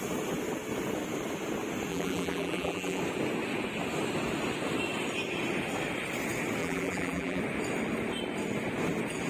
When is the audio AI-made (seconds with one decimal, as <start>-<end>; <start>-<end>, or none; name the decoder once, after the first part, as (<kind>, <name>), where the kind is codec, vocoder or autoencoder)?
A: 1.9-3.0 (vocoder, BigVGAN v2); 6.6-7.4